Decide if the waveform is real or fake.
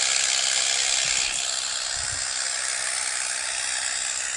real